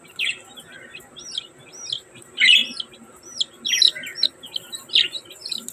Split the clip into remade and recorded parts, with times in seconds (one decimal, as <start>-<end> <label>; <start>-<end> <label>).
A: 0.0-5.7 recorded